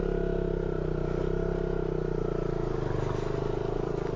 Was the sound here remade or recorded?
recorded